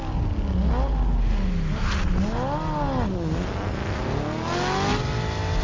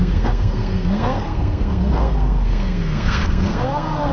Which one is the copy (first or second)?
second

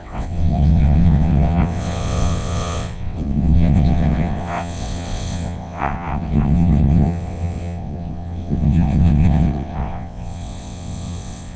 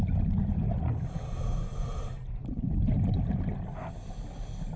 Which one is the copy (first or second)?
first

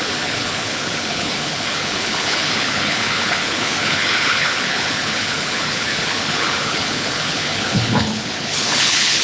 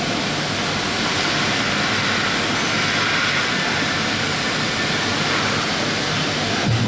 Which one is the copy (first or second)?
first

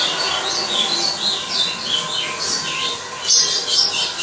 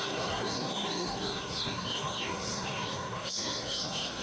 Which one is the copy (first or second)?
second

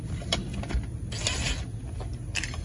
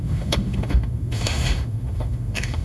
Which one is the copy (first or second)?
second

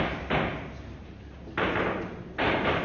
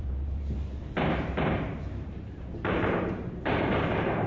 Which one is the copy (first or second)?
second